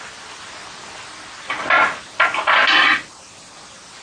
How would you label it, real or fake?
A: real